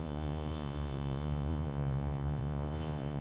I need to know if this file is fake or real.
fake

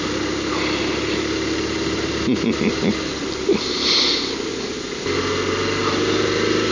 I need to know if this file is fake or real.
real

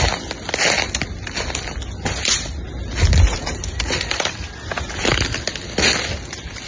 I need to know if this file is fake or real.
real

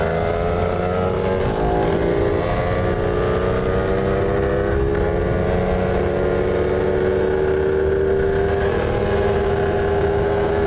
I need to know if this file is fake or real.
real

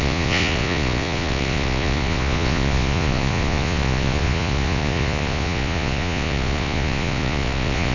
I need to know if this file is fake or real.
fake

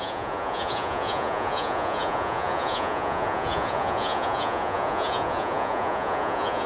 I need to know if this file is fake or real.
fake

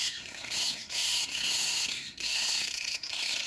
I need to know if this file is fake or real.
fake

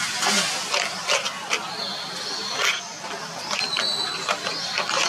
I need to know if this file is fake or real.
real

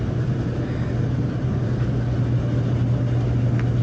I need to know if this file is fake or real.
real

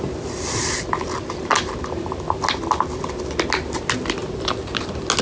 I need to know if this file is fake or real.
real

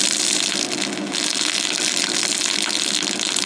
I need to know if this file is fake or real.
real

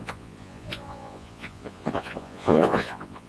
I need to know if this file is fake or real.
fake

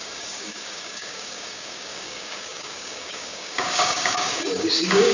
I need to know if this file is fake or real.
fake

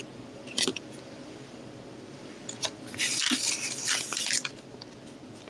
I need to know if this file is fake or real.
fake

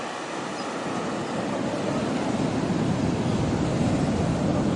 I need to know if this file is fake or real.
real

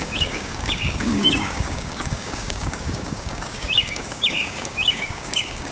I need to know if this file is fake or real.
fake